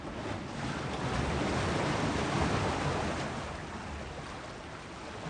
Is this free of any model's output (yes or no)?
yes